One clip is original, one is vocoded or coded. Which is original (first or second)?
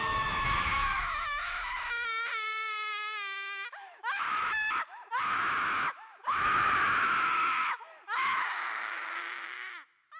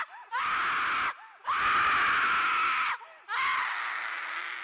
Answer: second